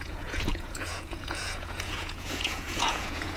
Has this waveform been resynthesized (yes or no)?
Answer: yes